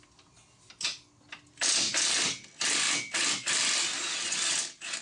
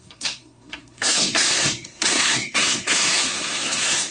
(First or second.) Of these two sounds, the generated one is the second